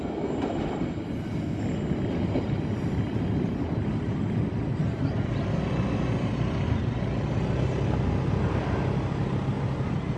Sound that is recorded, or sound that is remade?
recorded